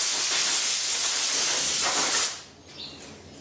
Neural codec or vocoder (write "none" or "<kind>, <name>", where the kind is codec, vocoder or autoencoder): none